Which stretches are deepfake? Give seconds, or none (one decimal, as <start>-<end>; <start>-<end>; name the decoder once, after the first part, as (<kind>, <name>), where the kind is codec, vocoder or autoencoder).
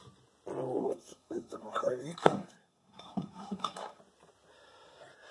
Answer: 0.8-4.0 (codec, SNAC)